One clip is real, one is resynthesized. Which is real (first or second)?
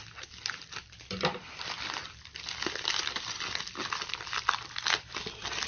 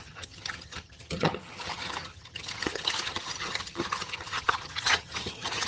first